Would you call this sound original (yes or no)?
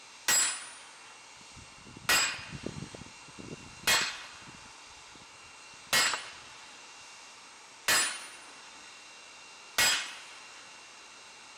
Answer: yes